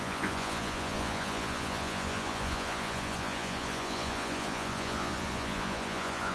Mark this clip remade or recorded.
remade